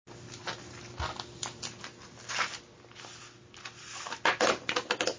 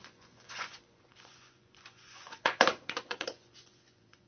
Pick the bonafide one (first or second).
first